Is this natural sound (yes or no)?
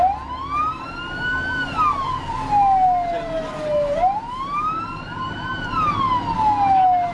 yes